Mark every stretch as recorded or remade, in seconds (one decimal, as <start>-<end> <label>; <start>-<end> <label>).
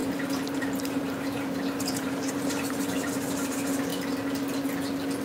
0.0-3.1 remade; 3.1-5.2 recorded